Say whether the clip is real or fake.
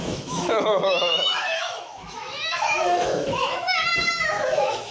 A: fake